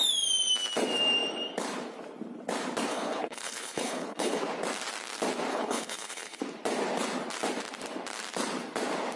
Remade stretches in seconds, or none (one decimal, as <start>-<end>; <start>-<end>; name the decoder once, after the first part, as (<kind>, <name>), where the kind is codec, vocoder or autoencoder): 2.9-4.4 (codec, HILCodec); 5.5-6.4